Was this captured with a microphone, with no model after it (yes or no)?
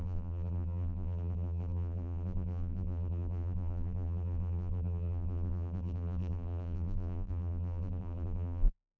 no